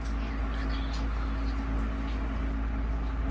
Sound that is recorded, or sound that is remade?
recorded